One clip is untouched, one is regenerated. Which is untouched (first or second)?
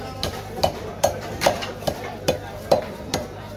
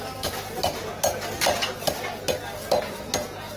second